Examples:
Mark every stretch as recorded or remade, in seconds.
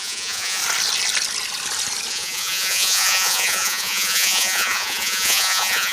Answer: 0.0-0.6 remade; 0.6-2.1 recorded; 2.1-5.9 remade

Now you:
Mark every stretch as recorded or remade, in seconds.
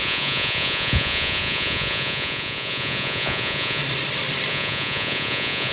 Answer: 0.0-3.8 remade; 3.8-4.5 recorded; 4.5-5.7 remade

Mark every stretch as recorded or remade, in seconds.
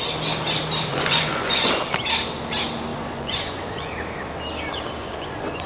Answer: 0.0-0.9 recorded; 0.9-1.7 remade; 1.7-2.9 recorded; 2.9-3.9 remade; 3.9-5.0 recorded; 5.0-5.7 remade